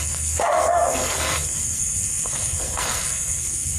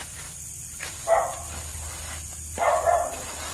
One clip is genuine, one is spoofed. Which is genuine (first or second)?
second